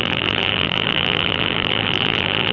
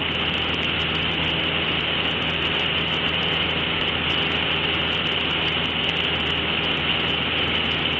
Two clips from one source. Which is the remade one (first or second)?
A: first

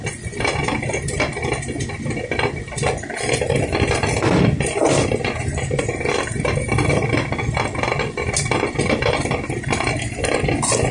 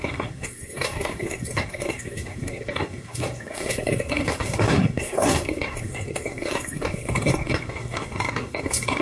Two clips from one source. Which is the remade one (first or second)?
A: second